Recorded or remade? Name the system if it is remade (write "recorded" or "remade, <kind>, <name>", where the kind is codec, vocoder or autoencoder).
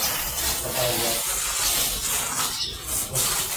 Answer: recorded